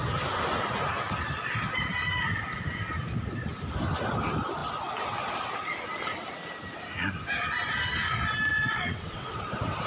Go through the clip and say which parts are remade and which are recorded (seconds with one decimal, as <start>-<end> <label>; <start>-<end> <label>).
0.0-8.5 recorded; 8.5-9.4 remade; 9.4-9.9 recorded